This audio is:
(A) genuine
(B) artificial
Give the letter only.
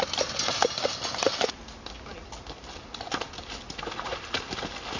A